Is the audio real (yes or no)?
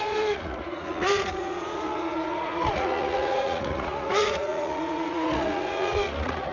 no